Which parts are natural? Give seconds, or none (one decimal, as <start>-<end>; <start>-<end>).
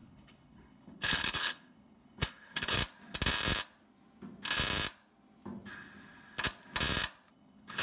2.8-7.3